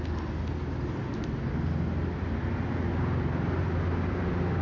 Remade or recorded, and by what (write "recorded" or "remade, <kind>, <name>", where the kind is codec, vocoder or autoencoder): recorded